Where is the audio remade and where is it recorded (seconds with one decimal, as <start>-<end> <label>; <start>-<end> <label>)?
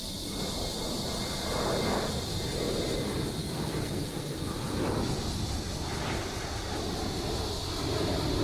0.0-3.4 recorded; 3.4-4.5 remade; 4.5-8.4 recorded